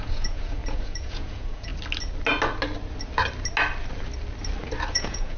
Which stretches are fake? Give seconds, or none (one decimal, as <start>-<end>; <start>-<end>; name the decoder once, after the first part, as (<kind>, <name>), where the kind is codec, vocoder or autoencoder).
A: 0.0-1.7 (vocoder, Vocos); 4.9-5.4